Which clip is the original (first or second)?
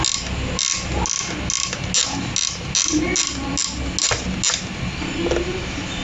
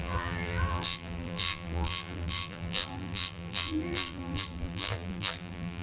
first